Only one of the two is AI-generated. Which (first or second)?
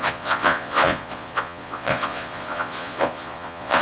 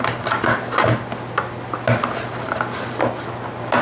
first